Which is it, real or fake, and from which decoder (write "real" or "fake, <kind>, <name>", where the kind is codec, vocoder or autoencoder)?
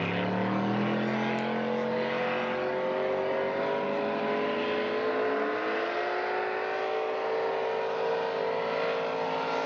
real